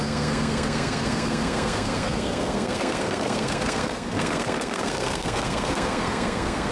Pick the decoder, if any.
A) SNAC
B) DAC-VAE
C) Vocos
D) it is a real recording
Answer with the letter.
A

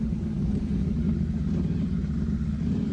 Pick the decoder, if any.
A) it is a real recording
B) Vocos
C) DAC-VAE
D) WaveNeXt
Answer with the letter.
A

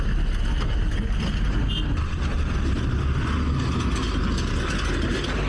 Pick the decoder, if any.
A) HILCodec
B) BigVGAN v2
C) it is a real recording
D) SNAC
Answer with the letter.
C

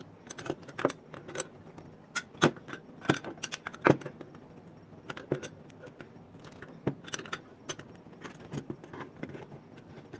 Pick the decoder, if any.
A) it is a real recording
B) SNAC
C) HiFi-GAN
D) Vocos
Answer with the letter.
A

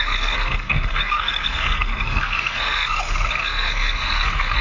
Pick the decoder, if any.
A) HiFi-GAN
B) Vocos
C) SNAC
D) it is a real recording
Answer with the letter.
C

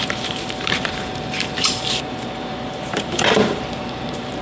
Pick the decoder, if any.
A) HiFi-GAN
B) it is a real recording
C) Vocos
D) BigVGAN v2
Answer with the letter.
D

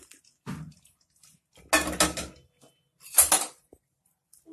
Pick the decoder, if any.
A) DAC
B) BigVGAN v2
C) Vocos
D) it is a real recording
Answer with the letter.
D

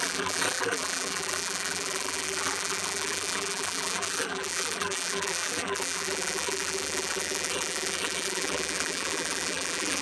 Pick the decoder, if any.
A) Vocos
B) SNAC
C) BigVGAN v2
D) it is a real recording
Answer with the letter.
C